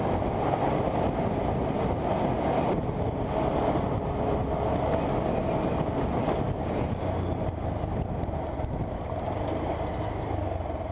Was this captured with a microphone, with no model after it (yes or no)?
yes